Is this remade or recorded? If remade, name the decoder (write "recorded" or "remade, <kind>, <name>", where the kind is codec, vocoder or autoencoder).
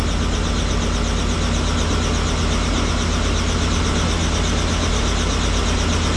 recorded